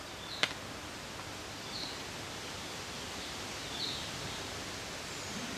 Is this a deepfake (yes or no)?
no